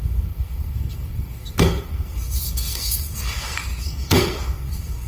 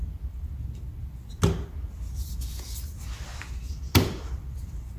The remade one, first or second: first